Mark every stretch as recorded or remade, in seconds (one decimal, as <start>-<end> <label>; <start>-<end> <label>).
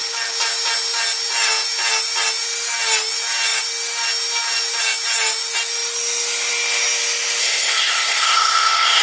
0.0-7.4 recorded; 7.4-9.0 remade